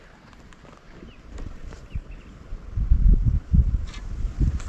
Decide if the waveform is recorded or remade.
recorded